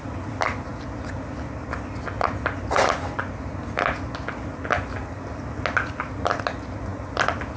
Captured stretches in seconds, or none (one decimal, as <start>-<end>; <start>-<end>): 0.0-7.6